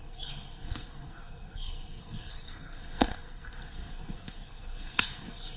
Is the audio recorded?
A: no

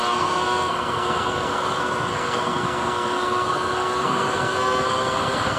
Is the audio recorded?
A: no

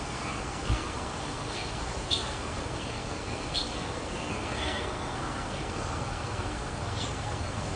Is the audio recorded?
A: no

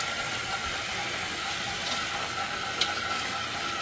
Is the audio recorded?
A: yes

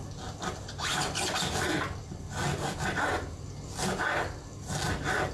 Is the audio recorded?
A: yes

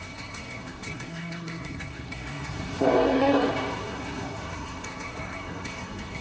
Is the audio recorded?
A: no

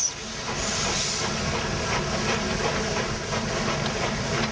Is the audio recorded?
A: yes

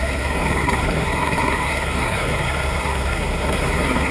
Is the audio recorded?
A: no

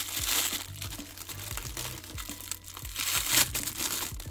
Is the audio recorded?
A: yes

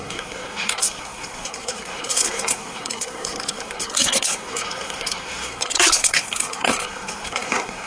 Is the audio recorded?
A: no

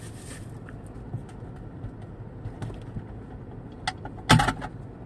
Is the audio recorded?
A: yes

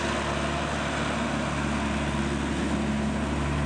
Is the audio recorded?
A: yes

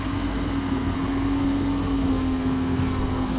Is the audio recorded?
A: no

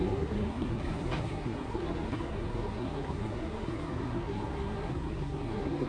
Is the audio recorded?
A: no